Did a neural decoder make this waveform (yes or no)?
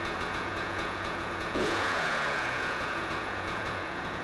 yes